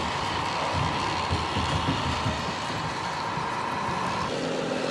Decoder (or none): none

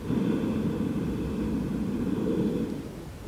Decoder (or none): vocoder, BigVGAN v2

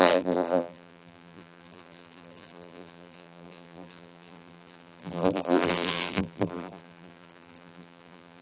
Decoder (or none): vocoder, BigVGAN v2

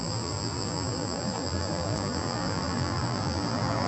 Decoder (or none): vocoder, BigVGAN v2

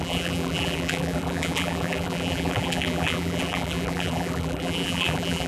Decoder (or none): vocoder, BigVGAN v2